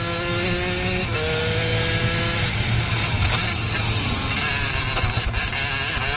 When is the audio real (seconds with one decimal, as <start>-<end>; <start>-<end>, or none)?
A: 0.0-6.2